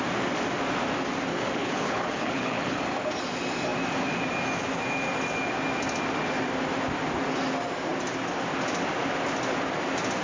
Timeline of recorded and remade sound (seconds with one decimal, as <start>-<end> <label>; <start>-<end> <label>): 0.0-1.3 recorded; 1.3-2.8 remade; 2.8-10.2 recorded

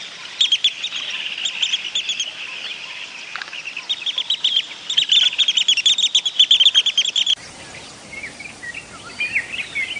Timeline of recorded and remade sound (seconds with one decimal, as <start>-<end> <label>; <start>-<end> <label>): 0.0-10.0 recorded

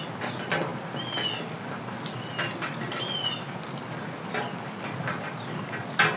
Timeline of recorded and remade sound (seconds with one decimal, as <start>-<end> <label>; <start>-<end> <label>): 0.0-6.2 recorded

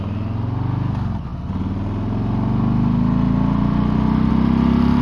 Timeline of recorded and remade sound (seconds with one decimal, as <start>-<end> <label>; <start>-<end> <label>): 0.0-5.0 recorded

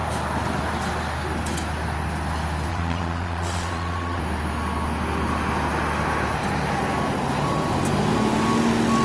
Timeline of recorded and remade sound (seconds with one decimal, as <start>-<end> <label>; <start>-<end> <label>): 0.0-2.7 recorded; 2.7-4.2 remade; 4.2-9.0 recorded